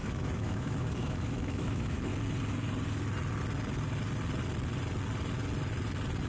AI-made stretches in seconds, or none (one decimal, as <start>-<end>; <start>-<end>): 0.0-2.1